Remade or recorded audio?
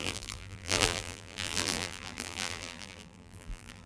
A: remade